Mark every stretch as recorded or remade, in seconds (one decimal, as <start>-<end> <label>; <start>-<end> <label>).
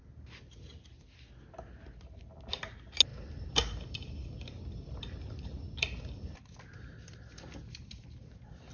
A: 0.0-8.7 recorded